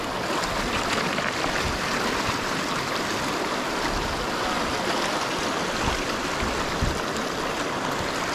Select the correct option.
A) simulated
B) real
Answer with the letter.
B